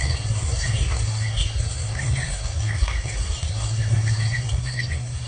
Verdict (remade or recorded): remade